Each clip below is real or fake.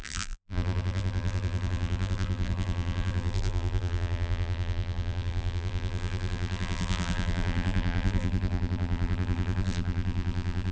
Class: fake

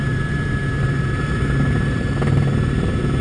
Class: fake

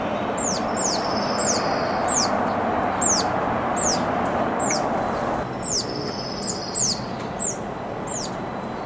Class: real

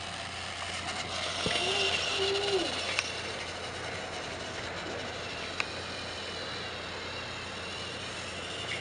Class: real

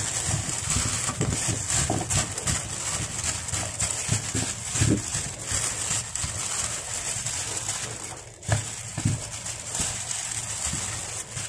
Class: real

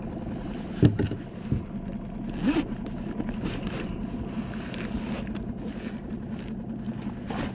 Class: real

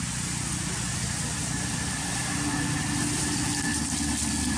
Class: real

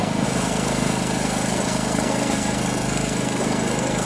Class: fake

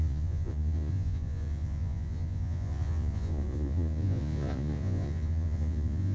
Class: fake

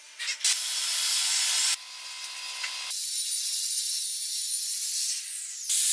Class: real